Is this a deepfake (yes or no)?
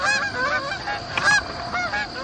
no